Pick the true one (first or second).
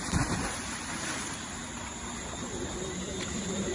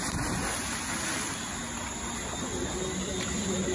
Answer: second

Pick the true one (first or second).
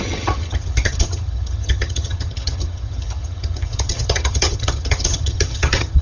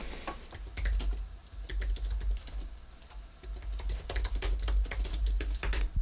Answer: second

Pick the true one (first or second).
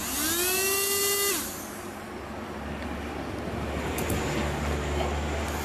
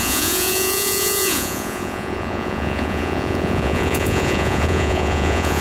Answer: first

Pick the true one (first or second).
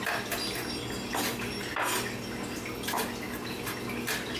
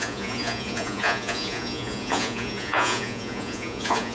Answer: first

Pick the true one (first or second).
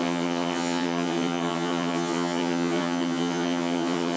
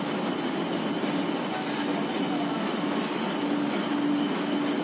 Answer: second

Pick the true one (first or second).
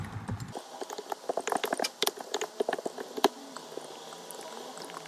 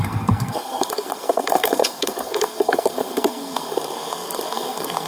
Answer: first